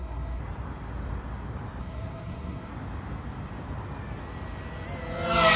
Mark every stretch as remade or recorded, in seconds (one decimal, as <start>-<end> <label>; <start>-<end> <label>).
0.0-0.4 remade; 0.4-1.8 recorded; 1.8-2.7 remade; 2.7-5.6 recorded